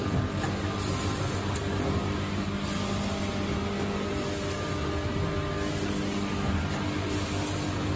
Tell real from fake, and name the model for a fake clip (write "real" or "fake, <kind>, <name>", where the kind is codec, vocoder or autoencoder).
real